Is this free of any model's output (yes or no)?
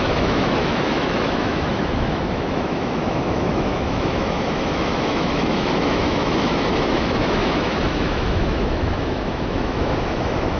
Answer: no